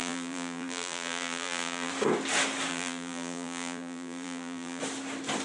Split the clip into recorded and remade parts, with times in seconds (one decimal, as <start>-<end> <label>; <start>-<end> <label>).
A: 0.0-1.9 remade; 1.9-2.7 recorded; 2.7-4.8 remade; 4.8-5.4 recorded